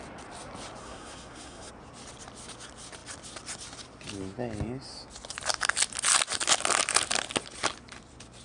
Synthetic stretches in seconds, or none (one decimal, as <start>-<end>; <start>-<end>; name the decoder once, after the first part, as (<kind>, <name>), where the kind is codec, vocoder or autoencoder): 0.8-1.7 (codec, SNAC)